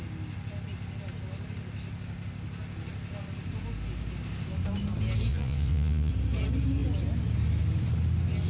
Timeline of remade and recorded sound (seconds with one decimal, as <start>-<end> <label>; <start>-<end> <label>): 0.0-5.3 recorded; 5.3-6.1 remade; 6.1-8.5 recorded